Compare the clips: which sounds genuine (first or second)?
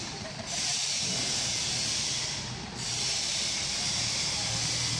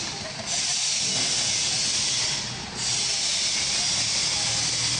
second